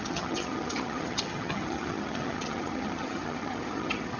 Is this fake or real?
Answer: fake